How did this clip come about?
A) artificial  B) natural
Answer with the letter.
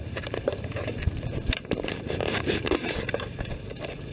A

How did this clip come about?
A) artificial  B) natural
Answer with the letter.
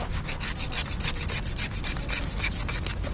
B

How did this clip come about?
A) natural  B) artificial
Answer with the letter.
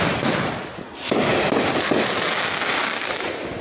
B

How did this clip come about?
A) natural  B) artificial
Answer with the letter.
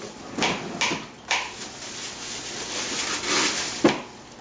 A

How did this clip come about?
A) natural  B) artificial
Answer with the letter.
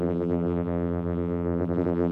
B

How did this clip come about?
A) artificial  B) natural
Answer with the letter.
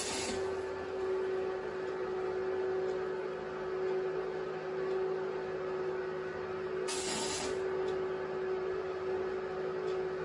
B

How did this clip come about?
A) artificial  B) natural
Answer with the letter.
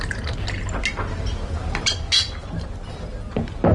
B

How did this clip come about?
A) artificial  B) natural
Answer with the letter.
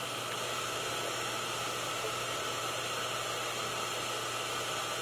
B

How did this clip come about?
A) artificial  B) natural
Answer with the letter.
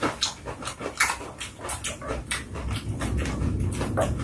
A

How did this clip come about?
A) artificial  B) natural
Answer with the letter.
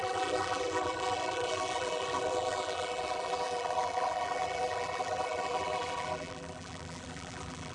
A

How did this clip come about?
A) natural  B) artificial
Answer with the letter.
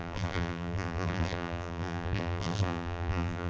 B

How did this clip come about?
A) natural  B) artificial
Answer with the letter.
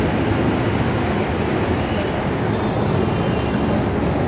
A